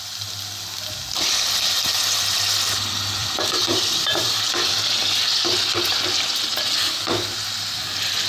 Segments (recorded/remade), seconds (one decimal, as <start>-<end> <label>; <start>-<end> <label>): 0.0-3.2 recorded; 3.2-4.7 remade; 4.7-8.3 recorded